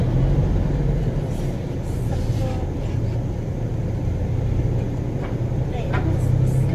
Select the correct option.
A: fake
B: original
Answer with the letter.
B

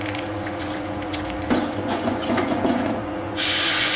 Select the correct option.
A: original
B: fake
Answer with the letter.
B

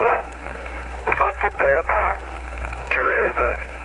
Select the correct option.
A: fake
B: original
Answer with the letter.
A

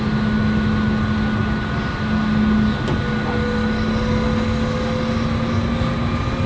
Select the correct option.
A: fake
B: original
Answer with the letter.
B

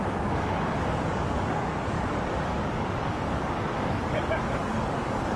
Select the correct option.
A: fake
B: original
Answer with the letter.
A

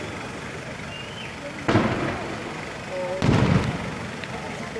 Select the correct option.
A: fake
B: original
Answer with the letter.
B